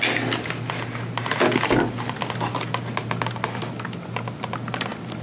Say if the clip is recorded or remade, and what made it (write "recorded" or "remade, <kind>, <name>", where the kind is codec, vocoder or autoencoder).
recorded